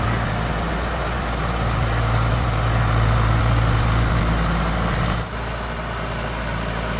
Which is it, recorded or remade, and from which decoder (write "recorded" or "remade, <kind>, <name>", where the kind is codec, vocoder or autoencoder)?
recorded